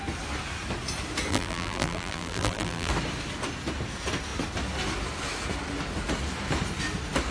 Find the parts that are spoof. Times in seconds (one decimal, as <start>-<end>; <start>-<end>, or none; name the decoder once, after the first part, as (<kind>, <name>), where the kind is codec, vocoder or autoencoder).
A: 1.3-2.9 (vocoder, BigVGAN v2)